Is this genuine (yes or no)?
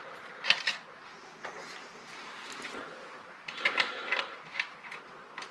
yes